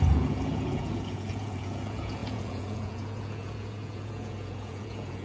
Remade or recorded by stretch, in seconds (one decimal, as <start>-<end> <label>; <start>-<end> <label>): 0.0-5.2 remade